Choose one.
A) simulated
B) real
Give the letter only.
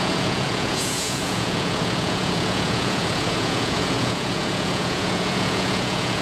A